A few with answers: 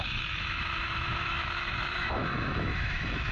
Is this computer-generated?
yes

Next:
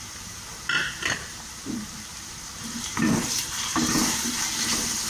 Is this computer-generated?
yes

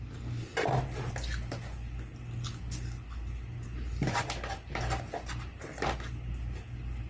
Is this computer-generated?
no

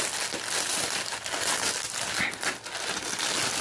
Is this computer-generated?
no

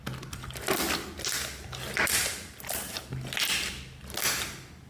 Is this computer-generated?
no